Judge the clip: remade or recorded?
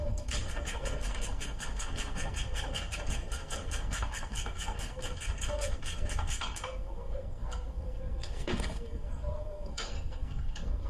remade